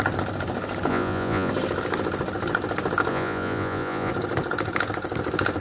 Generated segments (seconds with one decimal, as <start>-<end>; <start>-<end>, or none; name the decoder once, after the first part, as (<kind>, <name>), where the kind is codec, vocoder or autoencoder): 0.9-1.5 (vocoder, Vocos); 3.1-4.1